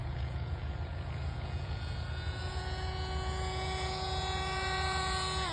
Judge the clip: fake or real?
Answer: fake